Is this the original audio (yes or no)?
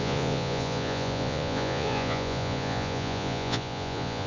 no